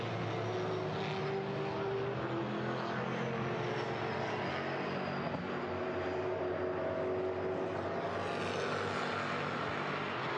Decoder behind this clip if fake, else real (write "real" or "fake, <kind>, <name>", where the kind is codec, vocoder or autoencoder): real